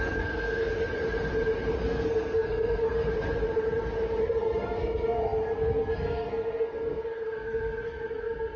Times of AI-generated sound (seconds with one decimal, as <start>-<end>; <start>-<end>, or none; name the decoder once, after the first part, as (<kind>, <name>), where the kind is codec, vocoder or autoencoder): 0.0-0.7 (codec, SNAC); 1.8-3.1; 4.2-8.6